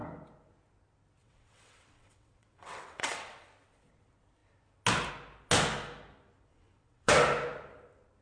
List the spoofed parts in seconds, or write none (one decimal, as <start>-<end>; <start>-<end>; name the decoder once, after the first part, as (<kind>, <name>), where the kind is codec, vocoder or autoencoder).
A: 1.2-3.5 (vocoder, WaveNeXt); 6.5-7.1